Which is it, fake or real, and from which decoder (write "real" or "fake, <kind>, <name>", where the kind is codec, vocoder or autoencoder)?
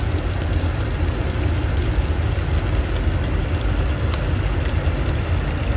real